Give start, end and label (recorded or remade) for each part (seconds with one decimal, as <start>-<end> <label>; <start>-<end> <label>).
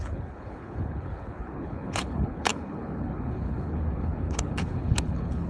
0.0-5.5 remade